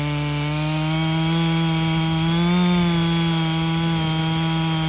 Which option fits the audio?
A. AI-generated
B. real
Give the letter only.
B